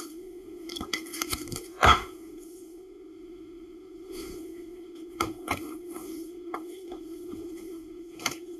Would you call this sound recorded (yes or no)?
no